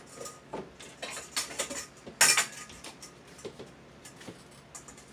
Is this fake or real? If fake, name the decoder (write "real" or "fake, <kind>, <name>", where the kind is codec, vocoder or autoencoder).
real